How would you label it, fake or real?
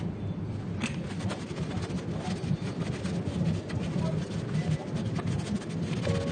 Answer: real